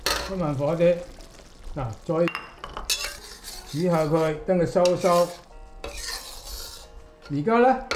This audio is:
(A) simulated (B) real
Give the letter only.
B